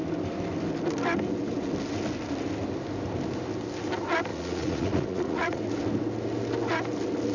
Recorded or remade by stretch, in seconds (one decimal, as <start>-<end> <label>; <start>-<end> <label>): 0.0-4.3 recorded; 4.3-5.6 remade; 5.6-7.3 recorded